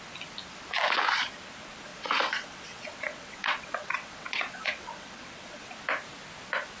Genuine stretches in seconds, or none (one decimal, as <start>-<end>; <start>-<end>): 0.0-1.9; 5.7-6.8